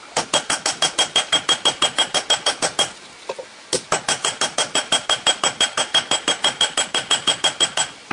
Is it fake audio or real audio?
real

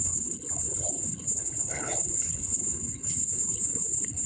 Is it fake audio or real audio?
fake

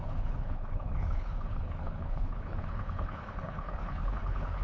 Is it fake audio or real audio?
fake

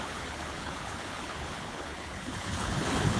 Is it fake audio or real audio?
fake